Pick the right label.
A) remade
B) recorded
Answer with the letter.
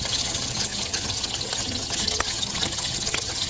A